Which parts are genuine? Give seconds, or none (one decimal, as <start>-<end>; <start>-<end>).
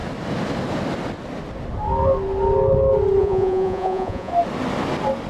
0.0-3.2; 4.3-5.3